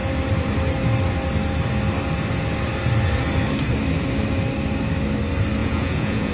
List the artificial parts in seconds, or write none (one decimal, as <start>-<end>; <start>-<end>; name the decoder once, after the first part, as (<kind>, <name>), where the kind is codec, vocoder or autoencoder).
5.6-6.3 (vocoder, Vocos)